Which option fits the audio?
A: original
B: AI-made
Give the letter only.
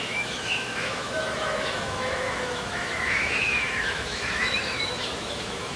B